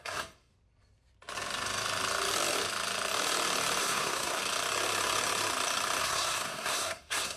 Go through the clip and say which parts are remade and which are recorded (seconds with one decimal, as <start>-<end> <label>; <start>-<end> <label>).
0.0-0.5 remade; 0.5-3.8 recorded; 3.8-4.4 remade; 4.4-6.0 recorded; 6.0-7.4 remade